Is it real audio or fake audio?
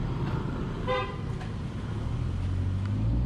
real